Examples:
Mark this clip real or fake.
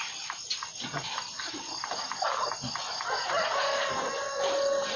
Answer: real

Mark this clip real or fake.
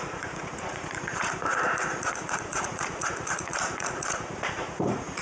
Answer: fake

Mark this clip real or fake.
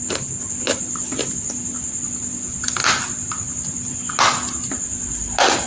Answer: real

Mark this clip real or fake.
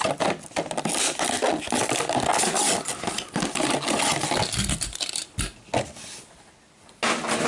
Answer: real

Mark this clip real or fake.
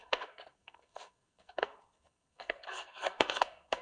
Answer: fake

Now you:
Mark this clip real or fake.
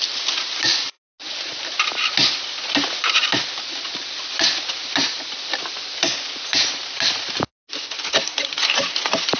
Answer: real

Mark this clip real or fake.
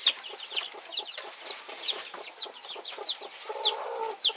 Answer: real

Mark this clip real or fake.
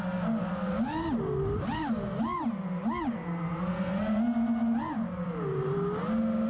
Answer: real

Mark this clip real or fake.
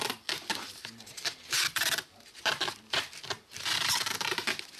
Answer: real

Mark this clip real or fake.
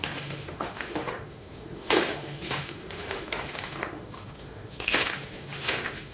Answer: fake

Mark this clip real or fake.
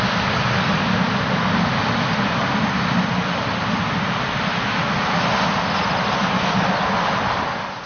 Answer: real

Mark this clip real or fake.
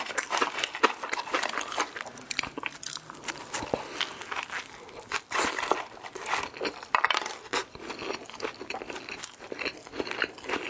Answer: real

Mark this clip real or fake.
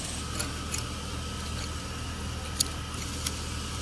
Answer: real